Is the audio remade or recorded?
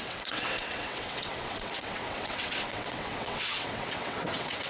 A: remade